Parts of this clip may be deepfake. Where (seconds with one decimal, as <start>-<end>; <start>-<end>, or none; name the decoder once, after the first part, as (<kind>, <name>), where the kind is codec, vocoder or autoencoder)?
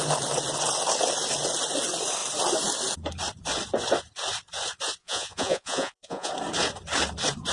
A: 5.0-6.3 (vocoder, Vocos)